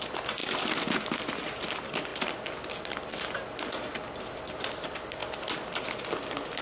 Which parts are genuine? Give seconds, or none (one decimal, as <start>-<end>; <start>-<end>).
0.0-6.6